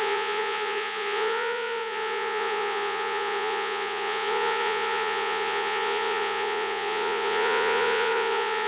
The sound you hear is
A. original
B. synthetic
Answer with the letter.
B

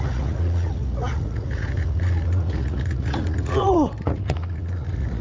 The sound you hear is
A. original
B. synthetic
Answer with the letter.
B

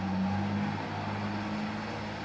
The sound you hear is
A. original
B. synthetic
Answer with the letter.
A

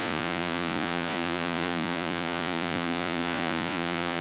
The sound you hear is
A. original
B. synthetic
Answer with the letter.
B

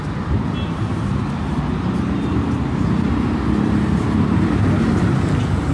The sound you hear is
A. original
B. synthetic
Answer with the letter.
A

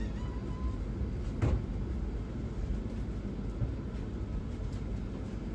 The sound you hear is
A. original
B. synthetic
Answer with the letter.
A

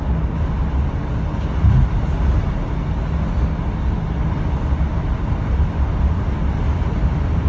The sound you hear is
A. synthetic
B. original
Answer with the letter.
B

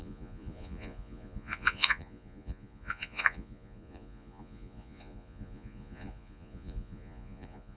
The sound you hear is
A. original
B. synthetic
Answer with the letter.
B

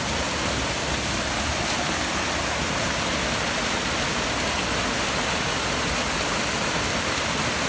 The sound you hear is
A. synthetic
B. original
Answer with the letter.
B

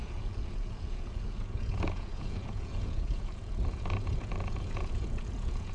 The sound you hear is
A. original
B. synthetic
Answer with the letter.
B